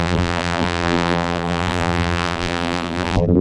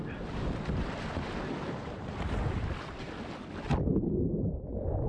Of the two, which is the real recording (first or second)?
second